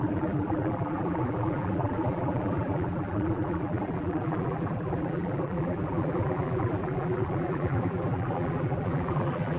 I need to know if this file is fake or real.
fake